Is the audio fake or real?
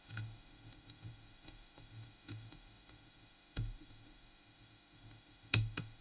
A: fake